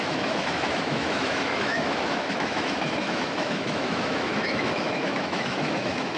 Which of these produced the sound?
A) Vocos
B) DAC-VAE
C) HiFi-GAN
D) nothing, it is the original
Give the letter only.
B